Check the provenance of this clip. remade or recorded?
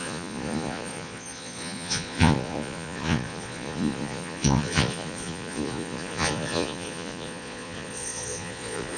remade